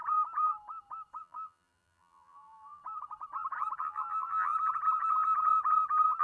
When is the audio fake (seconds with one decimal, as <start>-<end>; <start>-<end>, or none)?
1.2-2.8; 3.8-4.5

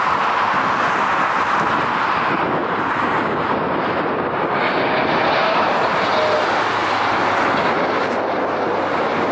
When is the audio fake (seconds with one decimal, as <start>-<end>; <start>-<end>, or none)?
2.6-3.1; 5.4-6.1

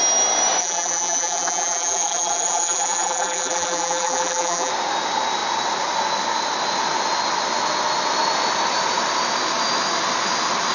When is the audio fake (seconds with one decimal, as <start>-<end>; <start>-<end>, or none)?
0.6-4.7

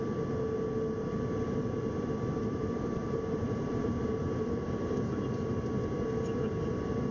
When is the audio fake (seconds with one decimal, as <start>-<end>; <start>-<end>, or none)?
2.4-5.3

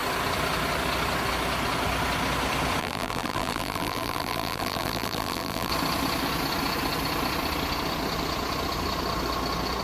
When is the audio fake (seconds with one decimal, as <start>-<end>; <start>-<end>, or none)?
2.8-5.7

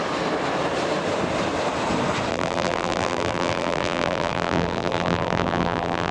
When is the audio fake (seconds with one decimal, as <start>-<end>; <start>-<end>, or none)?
2.3-6.1

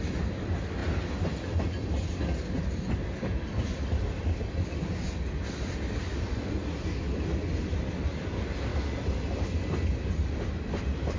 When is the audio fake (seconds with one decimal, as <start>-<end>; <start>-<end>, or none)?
none